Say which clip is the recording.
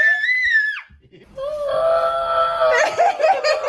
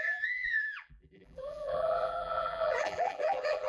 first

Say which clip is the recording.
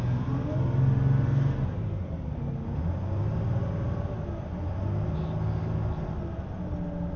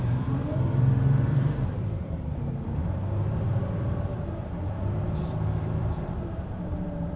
first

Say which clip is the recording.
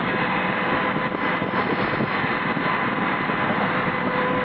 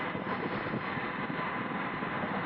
first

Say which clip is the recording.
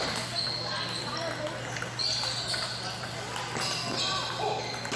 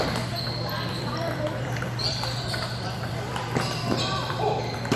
first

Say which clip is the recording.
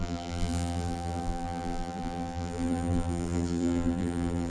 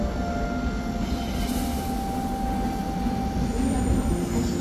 second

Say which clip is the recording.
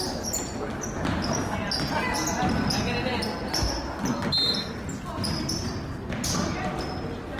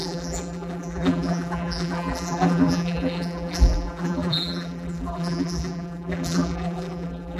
first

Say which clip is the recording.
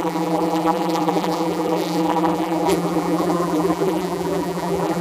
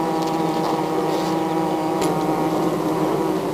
second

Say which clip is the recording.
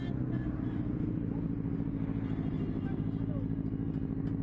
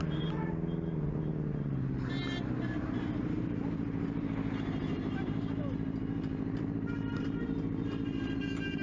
first